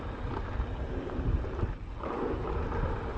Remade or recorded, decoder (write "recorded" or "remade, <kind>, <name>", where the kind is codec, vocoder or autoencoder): recorded